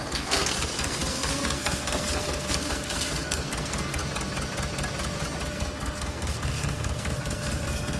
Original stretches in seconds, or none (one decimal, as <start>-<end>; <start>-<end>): 4.0-5.5